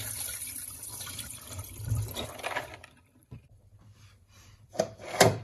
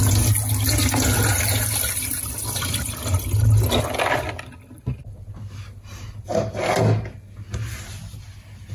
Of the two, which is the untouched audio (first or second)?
second